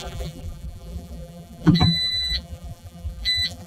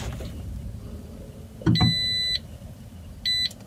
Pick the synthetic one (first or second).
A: first